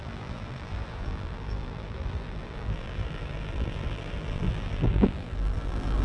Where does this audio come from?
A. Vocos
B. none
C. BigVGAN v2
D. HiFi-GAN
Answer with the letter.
C